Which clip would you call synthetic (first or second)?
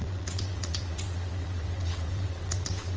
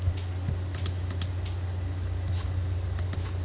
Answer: first